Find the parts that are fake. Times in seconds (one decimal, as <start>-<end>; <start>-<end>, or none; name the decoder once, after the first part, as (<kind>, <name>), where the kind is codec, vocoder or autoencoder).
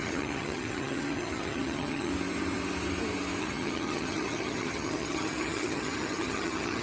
0.0-2.1 (vocoder, HiFi-GAN); 3.4-6.8